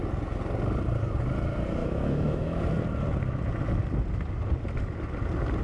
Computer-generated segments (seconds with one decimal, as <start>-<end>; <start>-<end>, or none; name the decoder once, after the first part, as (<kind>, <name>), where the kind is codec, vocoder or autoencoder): 1.8-2.6 (autoencoder, DAC-VAE)